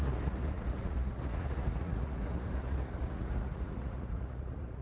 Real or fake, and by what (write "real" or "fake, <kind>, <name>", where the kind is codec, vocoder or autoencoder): fake, vocoder, Vocos